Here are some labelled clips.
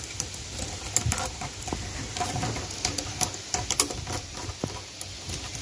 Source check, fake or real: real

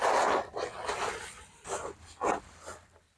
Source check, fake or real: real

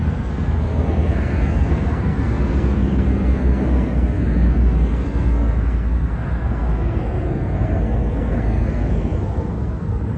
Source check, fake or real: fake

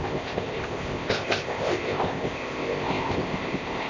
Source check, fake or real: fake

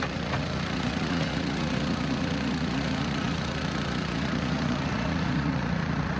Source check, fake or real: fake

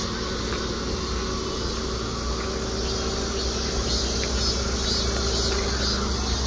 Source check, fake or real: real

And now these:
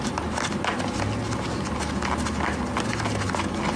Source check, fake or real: real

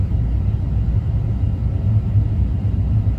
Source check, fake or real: real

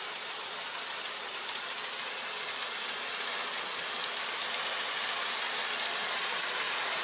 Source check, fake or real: real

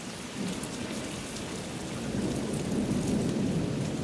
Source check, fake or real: real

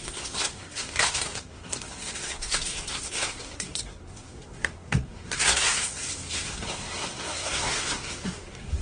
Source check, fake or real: fake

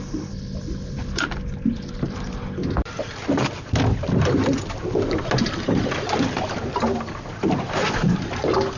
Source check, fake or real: real